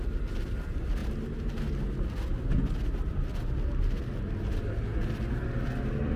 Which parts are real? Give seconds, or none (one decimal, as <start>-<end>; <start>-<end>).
0.0-6.2